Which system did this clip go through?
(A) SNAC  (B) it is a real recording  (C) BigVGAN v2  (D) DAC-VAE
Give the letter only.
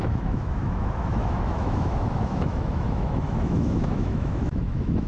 D